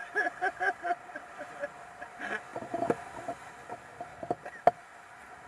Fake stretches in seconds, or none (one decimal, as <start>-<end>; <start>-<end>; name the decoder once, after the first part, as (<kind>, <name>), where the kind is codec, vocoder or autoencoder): 0.0-1.2 (vocoder, BigVGAN v2)